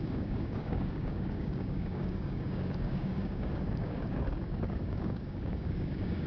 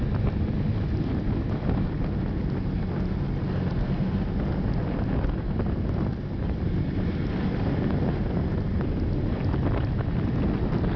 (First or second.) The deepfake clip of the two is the first